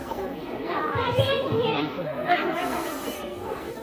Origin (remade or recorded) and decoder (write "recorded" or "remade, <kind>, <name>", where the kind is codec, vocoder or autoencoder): remade, codec, SNAC